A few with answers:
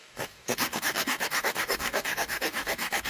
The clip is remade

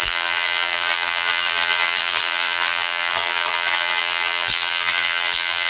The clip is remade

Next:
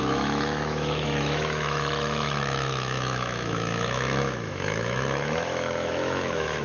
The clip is remade